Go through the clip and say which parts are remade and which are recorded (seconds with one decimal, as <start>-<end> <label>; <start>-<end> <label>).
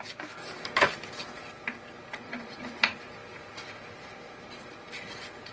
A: 0.0-5.5 recorded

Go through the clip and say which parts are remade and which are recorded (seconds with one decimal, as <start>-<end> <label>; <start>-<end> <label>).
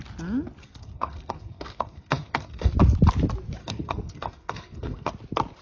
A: 0.0-0.6 recorded; 0.6-2.7 remade; 2.7-3.6 recorded; 3.6-5.1 remade; 5.1-5.6 recorded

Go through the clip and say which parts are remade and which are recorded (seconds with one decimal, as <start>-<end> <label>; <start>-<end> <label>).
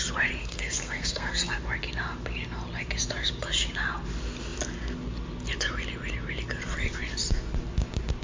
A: 0.0-0.4 recorded; 0.4-1.6 remade; 1.6-8.2 recorded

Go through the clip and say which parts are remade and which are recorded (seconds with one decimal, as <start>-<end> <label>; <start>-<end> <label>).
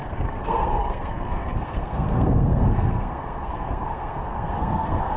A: 0.0-5.2 remade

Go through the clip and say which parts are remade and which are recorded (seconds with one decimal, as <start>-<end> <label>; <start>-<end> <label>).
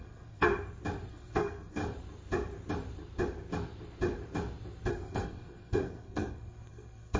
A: 0.0-0.5 remade; 0.5-1.1 recorded; 1.1-1.8 remade; 1.8-4.9 recorded; 4.9-7.2 remade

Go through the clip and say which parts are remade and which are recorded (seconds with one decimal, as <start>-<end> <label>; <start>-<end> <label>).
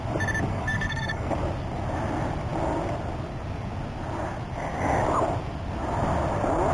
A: 0.0-0.5 recorded; 0.5-1.3 remade; 1.3-6.7 recorded